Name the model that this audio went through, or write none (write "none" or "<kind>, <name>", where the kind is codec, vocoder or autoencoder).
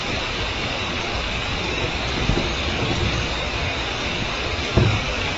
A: codec, DAC